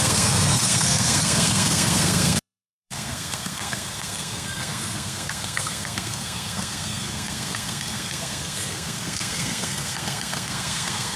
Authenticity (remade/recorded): remade